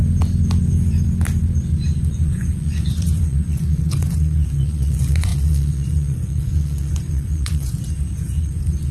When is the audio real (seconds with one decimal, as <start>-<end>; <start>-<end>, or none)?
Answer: 0.0-2.1